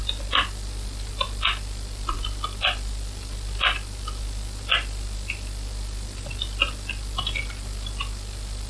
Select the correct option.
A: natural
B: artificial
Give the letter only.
A